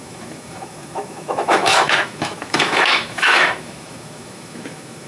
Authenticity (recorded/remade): remade